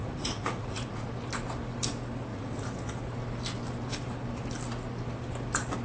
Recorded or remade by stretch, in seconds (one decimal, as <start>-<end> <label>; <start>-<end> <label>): 0.0-1.1 remade; 1.1-2.3 recorded; 2.3-3.0 remade; 3.0-5.8 recorded